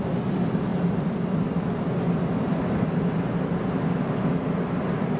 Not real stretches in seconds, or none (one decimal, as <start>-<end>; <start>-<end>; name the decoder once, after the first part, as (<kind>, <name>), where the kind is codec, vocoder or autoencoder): none